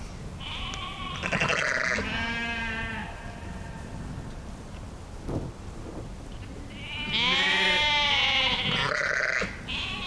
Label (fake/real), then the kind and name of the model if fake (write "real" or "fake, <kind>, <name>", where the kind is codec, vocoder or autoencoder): real